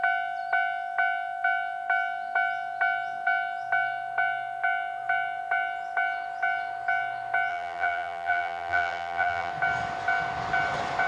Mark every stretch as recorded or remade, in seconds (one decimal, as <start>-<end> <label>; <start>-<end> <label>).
0.0-7.5 recorded; 7.5-9.5 remade; 9.5-11.1 recorded